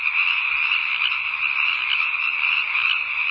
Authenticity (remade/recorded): recorded